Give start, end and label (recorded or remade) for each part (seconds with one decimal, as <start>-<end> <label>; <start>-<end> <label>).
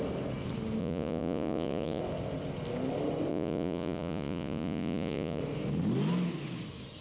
0.0-0.8 recorded; 0.8-2.0 remade; 2.0-3.3 recorded; 3.3-5.4 remade; 5.4-7.0 recorded